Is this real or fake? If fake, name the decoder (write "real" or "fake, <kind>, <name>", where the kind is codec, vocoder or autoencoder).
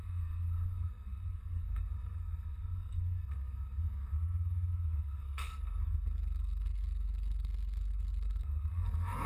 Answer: fake, codec, SNAC